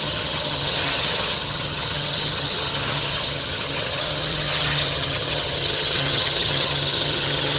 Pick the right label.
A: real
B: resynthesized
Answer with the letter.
B